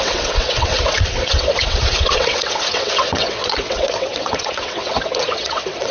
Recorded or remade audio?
remade